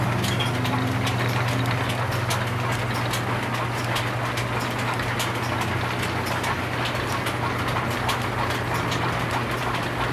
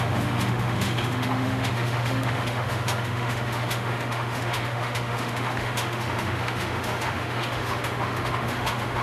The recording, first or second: first